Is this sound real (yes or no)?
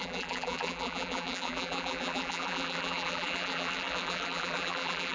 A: no